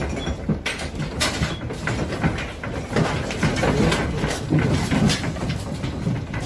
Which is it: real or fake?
real